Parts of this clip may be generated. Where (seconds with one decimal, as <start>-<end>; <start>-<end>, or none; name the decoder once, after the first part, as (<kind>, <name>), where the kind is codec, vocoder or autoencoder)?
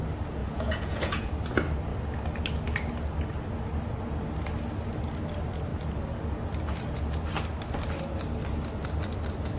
0.4-1.3 (vocoder, Vocos)